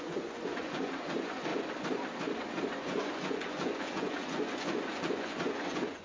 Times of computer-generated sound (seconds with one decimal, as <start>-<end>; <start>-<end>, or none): 0.0-1.5; 2.7-6.0